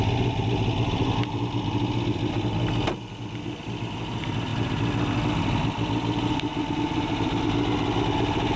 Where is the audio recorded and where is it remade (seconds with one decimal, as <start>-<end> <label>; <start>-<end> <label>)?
0.0-8.6 recorded

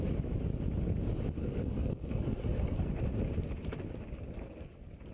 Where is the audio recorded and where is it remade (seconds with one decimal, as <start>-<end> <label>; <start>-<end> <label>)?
0.0-1.4 recorded; 1.4-2.9 remade; 2.9-5.1 recorded

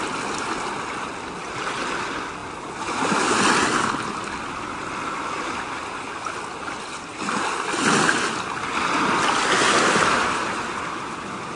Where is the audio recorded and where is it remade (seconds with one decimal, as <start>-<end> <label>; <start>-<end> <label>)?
0.0-11.6 recorded